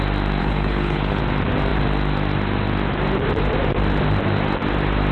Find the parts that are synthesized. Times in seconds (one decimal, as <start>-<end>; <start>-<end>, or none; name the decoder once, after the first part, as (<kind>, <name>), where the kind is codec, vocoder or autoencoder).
0.4-1.2 (codec, HILCodec)

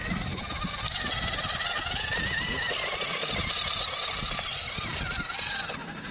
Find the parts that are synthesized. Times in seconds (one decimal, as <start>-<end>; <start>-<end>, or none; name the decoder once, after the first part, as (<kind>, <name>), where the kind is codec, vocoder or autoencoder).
none

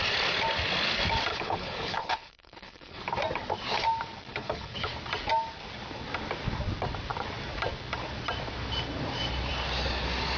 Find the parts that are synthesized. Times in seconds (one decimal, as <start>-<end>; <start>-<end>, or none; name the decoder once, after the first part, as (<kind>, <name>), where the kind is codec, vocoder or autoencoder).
1.3-3.0 (codec, HILCodec); 4.3-4.9

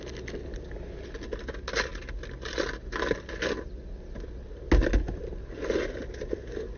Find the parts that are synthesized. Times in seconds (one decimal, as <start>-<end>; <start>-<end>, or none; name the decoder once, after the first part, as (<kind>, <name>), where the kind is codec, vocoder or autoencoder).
none

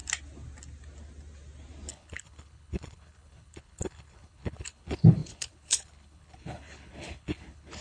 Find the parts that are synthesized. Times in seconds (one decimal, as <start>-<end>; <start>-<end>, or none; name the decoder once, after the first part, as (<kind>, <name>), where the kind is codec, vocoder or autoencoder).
1.9-7.8 (codec, HILCodec)

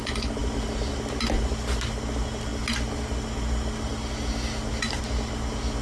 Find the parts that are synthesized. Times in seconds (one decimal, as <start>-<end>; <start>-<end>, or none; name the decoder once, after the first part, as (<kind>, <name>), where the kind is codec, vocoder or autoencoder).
none

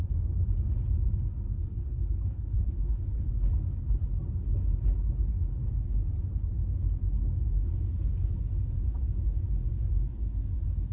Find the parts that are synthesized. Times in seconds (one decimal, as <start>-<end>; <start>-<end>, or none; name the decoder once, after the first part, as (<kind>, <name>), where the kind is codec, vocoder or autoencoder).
1.7-3.3 (codec, HILCodec)